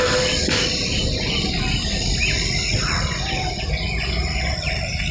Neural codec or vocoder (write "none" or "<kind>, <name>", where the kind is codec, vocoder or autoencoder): none